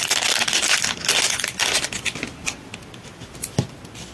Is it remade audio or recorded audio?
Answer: recorded